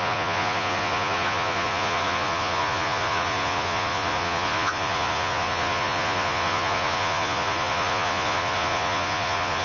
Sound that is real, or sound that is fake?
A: fake